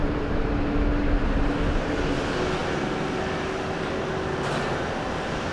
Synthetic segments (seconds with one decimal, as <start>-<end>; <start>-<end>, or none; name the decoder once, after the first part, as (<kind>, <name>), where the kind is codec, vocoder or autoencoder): 0.0-0.5 (vocoder, BigVGAN v2); 2.6-3.2

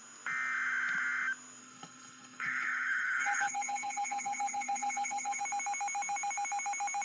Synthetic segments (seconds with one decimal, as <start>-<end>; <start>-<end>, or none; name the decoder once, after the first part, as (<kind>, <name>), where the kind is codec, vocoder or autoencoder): 1.6-5.4 (codec, HILCodec)

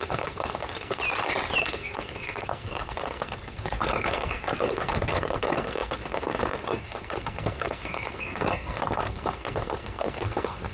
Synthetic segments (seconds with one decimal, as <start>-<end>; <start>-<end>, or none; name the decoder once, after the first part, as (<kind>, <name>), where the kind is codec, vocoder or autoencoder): 0.0-1.0 (codec, SNAC); 1.6-10.7